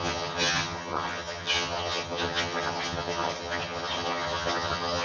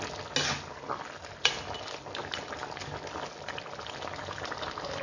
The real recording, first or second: second